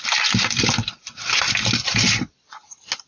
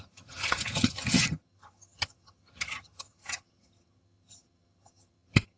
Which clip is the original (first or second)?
first